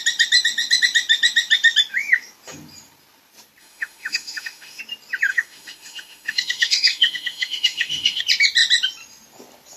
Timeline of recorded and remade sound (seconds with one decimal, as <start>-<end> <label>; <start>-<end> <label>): 0.0-3.6 recorded; 3.6-4.8 remade; 4.8-5.3 recorded; 5.3-8.2 remade; 8.2-9.8 recorded